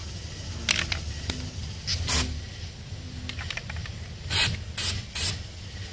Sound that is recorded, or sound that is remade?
recorded